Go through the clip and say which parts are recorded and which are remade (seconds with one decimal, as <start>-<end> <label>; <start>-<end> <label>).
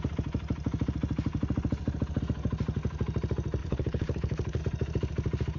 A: 0.0-3.6 recorded; 3.6-4.6 remade; 4.6-5.6 recorded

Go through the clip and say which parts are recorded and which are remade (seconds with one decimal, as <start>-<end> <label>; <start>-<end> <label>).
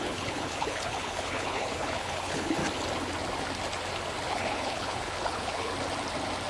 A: 0.0-2.6 remade; 2.6-4.3 recorded; 4.3-5.7 remade; 5.7-6.5 recorded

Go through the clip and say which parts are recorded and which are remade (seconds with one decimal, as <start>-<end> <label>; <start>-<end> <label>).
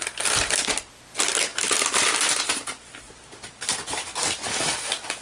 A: 0.0-5.2 recorded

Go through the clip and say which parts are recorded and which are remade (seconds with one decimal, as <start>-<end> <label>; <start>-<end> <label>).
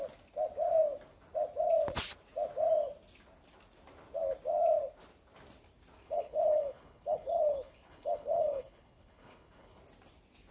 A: 0.0-6.0 recorded; 6.0-9.8 remade; 9.8-10.5 recorded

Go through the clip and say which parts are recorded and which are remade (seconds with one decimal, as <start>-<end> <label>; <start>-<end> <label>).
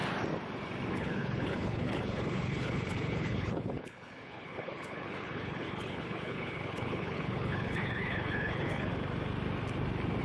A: 0.0-0.9 recorded; 0.9-8.9 remade; 8.9-10.2 recorded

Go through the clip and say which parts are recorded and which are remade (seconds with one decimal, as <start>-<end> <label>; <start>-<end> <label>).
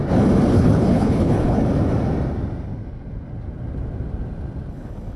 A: 0.0-0.5 recorded; 0.5-1.6 remade; 1.6-4.7 recorded; 4.7-5.2 remade